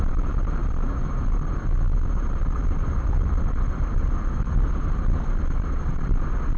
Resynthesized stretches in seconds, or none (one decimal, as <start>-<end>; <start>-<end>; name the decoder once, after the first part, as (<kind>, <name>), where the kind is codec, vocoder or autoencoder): 0.0-0.6 (vocoder, BigVGAN v2); 2.3-6.6